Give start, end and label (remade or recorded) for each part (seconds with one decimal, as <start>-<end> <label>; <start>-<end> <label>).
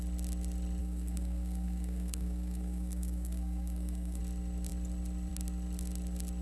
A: 0.0-0.8 recorded; 0.8-4.2 remade; 4.2-6.4 recorded